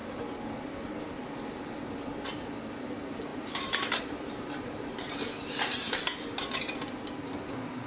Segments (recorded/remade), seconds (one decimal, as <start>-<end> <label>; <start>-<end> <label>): 0.0-3.3 recorded; 3.3-5.3 remade; 5.3-7.9 recorded